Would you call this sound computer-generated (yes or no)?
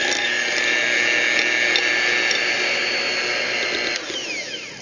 no